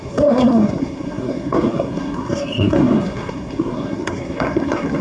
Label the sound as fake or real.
fake